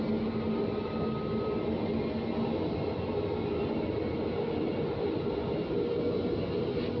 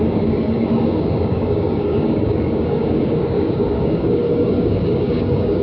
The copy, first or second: second